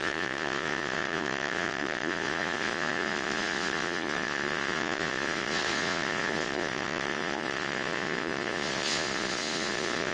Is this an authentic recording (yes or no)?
no